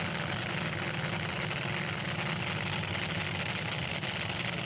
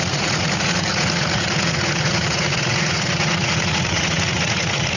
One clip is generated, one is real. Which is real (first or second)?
first